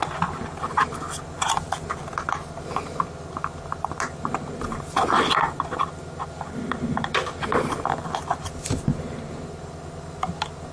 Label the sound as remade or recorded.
recorded